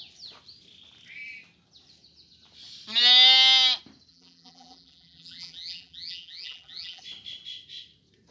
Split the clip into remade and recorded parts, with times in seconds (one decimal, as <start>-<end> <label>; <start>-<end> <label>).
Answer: 0.0-4.1 recorded; 4.1-7.0 remade; 7.0-8.3 recorded